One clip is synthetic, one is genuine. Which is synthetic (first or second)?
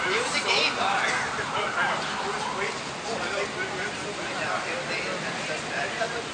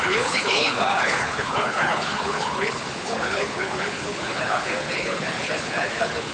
second